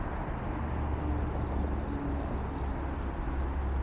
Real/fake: real